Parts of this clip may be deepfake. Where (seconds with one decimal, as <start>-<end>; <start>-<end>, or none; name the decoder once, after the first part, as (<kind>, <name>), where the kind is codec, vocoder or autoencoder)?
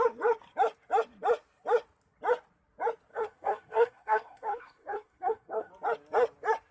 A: 3.1-5.7 (codec, SNAC)